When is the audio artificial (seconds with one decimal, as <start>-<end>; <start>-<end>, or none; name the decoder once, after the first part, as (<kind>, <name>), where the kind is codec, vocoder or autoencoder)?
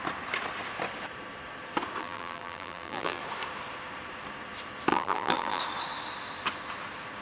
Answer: 2.0-3.2 (vocoder, BigVGAN v2); 4.9-5.6